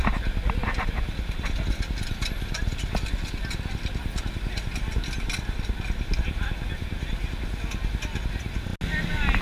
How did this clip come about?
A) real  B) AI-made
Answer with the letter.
A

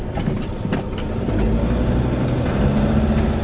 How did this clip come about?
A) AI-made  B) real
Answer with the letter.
B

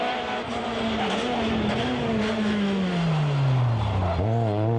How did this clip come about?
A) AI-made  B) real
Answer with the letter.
B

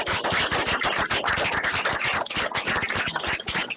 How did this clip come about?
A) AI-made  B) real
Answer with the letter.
B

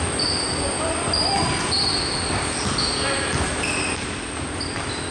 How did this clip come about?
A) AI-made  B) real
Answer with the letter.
B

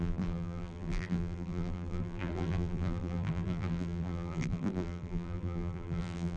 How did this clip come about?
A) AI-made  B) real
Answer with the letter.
A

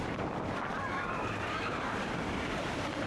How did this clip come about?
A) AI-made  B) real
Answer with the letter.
A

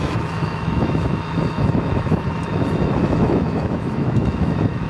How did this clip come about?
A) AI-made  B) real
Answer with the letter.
A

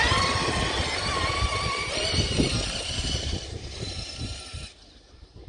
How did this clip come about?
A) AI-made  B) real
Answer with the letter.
A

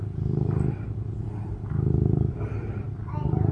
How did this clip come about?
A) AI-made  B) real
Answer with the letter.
B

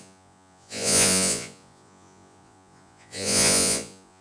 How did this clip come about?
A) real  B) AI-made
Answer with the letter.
B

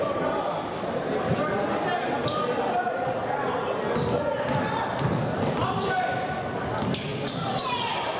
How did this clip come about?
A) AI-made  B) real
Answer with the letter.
B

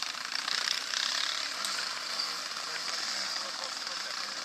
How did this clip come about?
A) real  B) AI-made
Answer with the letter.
B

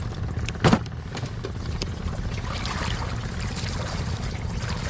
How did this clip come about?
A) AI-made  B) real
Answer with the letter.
B